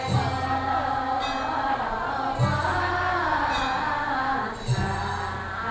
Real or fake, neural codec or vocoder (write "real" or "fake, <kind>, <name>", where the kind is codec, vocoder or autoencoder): real